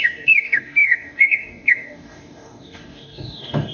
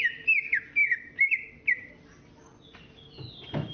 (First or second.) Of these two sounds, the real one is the second